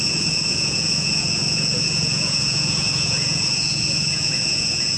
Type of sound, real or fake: fake